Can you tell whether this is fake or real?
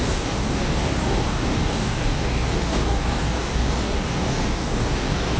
fake